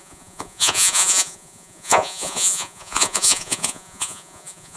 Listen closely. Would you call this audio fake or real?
fake